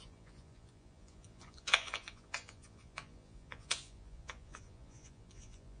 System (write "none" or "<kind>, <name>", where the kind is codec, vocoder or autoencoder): vocoder, Vocos